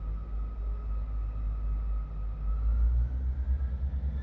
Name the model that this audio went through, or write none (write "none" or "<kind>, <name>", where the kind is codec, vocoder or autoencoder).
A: none